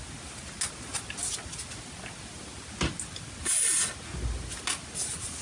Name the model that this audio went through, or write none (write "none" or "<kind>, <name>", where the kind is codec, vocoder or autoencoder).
none